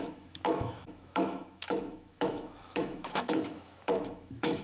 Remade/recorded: remade